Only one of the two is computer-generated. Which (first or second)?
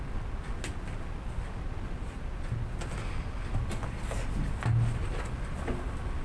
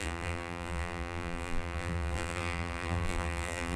second